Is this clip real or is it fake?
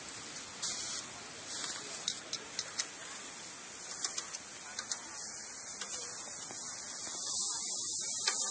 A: real